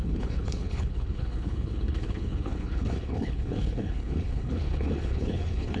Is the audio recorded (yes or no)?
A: no